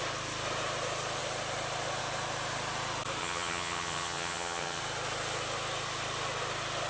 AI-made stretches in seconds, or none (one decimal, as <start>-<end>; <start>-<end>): 3.2-4.8

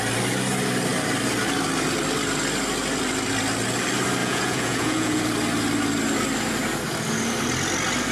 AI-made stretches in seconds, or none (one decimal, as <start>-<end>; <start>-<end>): 4.2-5.2